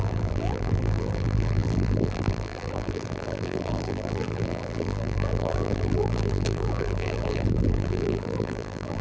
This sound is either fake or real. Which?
fake